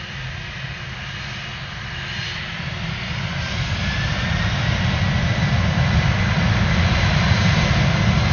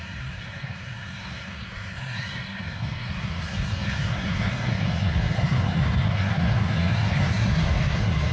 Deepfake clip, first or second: second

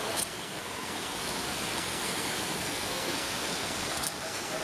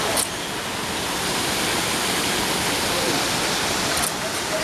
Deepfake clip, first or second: first